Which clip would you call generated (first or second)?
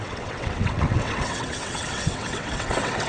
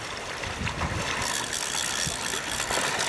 first